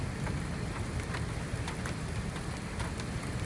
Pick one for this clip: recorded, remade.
recorded